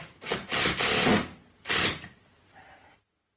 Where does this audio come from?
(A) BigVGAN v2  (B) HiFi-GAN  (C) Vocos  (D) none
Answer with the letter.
D